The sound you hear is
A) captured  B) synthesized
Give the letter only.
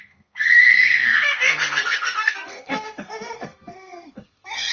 B